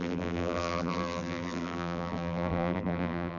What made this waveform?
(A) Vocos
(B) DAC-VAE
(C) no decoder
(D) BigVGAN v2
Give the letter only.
D